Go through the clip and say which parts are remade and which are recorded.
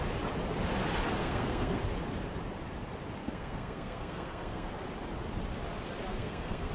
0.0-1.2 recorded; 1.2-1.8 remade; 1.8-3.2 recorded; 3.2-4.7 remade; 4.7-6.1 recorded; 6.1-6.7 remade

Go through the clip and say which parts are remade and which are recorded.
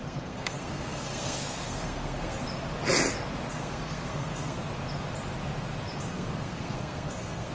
0.0-2.4 remade; 2.4-3.5 recorded; 3.5-4.6 remade; 4.6-6.1 recorded; 6.1-7.5 remade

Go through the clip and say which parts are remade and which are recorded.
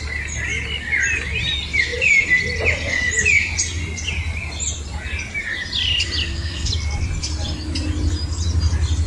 0.0-6.2 recorded; 6.2-6.7 remade; 6.7-9.1 recorded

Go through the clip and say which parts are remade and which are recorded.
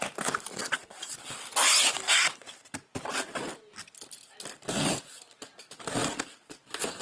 0.0-7.0 recorded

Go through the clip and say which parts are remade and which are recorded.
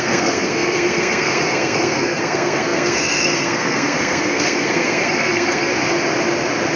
0.0-5.7 remade; 5.7-6.8 recorded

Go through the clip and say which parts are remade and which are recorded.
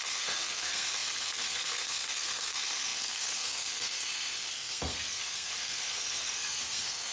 0.0-7.1 remade